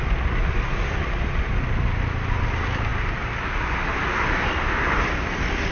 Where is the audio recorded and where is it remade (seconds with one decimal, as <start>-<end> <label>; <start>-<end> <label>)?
0.0-5.7 recorded